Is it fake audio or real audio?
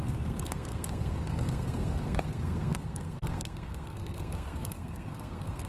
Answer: fake